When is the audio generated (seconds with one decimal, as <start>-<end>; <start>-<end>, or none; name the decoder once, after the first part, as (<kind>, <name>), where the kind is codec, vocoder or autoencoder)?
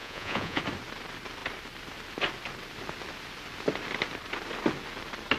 0.0-0.6 (vocoder, Vocos)